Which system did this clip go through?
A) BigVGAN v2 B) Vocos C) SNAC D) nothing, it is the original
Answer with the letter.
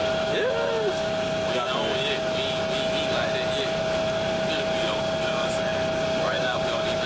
D